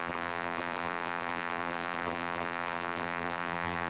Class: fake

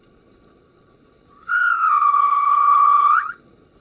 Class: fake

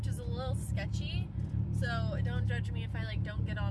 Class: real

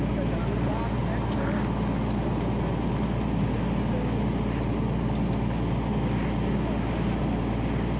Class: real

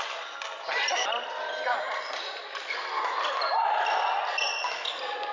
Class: real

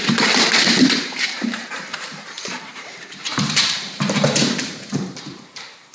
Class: fake